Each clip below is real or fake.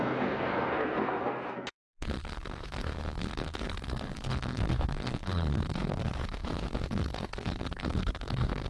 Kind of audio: fake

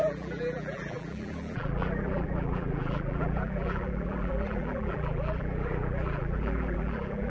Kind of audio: fake